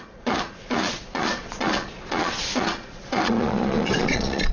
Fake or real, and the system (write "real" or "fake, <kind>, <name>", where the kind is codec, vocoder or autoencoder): fake, vocoder, Vocos